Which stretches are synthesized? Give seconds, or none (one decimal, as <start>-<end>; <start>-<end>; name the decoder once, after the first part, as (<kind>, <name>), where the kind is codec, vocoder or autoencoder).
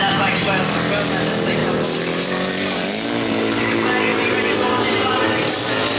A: 1.6-3.6 (vocoder, BigVGAN v2); 4.1-5.2